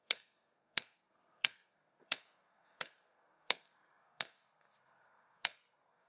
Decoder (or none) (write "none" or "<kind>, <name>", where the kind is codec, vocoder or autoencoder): codec, SNAC